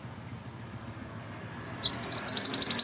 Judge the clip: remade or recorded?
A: recorded